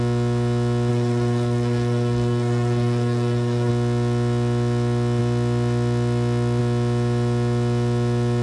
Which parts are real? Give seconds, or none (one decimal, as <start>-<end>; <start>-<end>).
0.0-0.9; 3.7-8.4